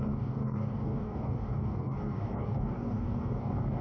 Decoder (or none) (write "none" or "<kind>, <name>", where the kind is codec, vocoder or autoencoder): codec, DAC